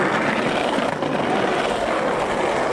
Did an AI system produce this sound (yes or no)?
no